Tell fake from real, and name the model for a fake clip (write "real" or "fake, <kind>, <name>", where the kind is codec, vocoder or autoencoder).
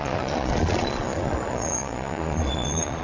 fake, vocoder, Vocos